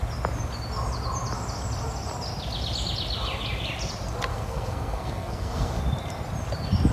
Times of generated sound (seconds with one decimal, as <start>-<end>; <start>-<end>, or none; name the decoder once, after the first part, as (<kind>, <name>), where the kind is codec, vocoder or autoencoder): 4.3-5.8 (codec, SNAC)